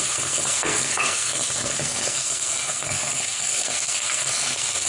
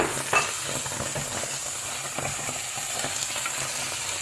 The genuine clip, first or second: second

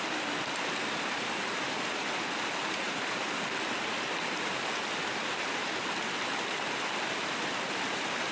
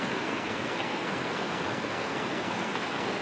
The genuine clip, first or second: first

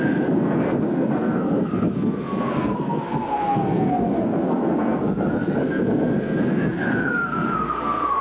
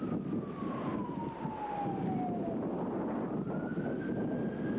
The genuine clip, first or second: second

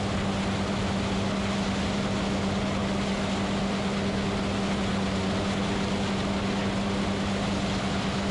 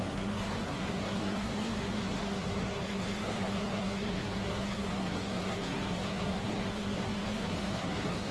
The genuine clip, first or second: first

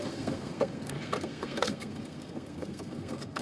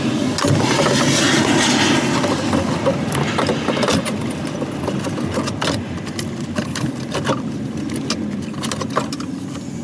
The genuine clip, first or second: second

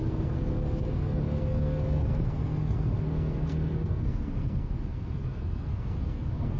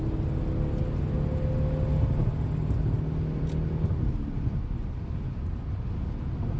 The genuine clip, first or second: second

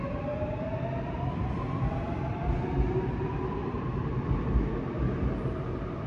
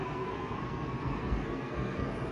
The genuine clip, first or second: first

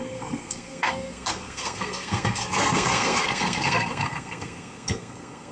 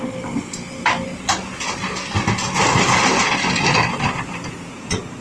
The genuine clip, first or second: second